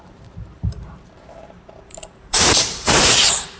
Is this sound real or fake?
fake